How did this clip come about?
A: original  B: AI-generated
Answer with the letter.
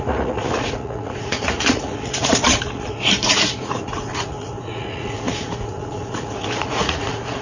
B